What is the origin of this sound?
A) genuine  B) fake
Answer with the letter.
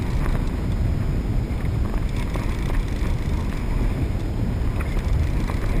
A